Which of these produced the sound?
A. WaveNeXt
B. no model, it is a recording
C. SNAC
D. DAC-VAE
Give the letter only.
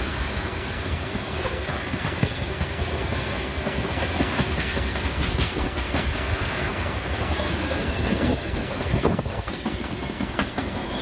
C